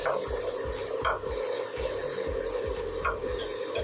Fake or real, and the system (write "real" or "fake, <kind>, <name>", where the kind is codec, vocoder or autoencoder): real